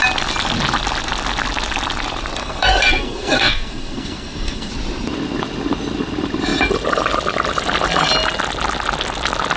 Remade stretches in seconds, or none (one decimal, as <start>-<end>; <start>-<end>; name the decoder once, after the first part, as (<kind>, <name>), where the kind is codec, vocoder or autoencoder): 2.4-4.7 (codec, SNAC)